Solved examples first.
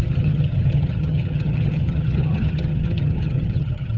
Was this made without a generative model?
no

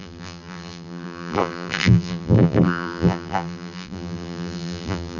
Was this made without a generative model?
no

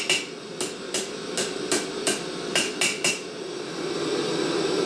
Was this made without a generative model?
yes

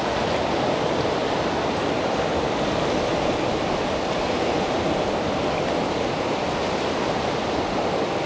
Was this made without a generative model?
yes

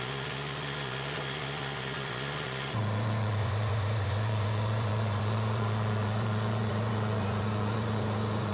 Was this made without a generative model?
no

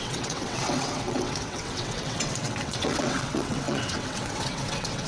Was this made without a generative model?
no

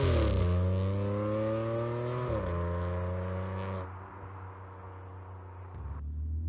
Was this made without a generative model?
yes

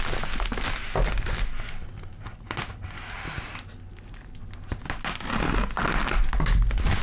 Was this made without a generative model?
yes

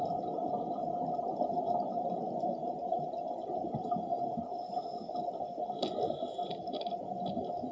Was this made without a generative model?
yes